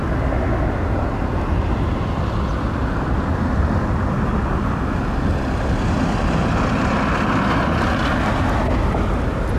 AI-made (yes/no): no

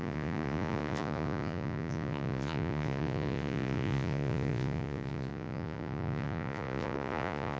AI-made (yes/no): yes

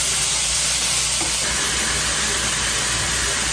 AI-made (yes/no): no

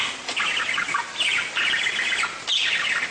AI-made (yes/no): no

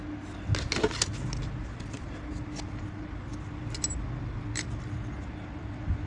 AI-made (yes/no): no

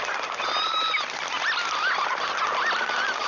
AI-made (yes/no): no